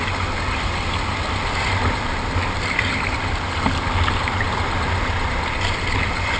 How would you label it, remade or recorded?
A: recorded